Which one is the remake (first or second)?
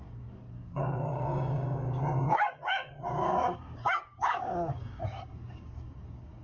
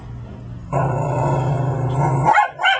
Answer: first